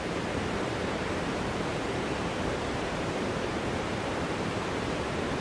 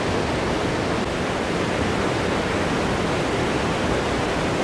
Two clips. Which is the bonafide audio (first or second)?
second